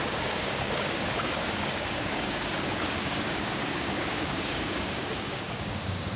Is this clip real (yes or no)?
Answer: no